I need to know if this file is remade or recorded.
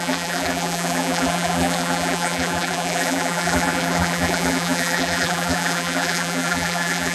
remade